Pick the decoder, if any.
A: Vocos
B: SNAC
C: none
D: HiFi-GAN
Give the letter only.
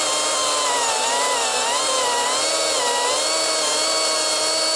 C